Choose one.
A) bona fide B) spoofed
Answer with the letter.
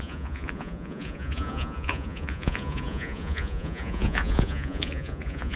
B